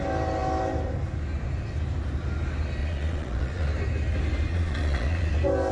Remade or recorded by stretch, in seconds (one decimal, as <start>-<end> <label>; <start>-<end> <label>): 0.0-2.8 recorded; 2.8-3.7 remade; 3.7-4.5 recorded; 4.5-5.3 remade; 5.3-5.7 recorded